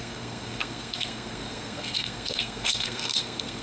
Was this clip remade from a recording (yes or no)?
yes